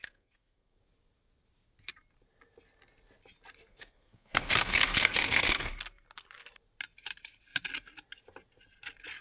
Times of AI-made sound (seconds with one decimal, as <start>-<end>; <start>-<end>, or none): 0.0-0.8; 3.6-5.7